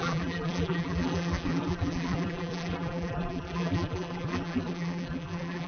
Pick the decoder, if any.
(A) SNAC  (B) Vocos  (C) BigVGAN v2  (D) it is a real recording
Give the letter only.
C